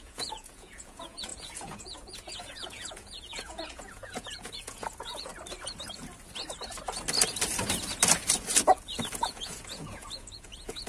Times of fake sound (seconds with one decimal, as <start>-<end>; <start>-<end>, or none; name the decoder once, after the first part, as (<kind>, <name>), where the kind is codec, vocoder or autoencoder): 0.0-5.3 (vocoder, Vocos); 9.2-10.9